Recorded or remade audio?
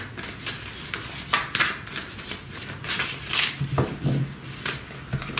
recorded